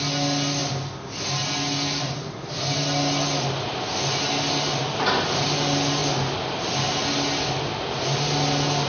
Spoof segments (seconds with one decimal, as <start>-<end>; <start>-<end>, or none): none